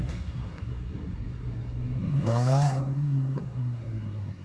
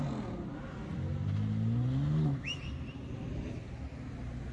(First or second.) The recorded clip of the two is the second